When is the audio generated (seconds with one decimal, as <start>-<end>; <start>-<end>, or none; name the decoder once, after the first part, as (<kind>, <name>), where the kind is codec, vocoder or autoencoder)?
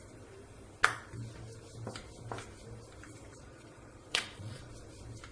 3.3-4.7 (vocoder, Vocos)